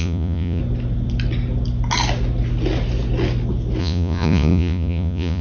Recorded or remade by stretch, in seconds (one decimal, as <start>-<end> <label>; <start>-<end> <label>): 0.0-0.6 remade; 0.6-3.8 recorded; 3.8-5.4 remade